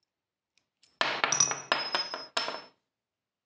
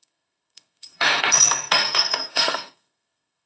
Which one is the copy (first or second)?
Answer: second